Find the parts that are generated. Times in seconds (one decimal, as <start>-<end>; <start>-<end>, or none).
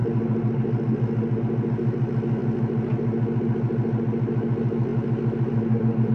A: none